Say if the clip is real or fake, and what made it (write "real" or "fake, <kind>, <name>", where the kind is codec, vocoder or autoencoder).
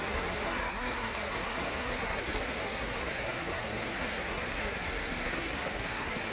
fake, codec, SNAC